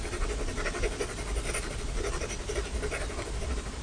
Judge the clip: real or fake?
real